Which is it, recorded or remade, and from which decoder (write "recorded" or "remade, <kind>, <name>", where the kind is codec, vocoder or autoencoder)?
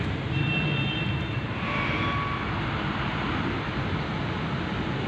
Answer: recorded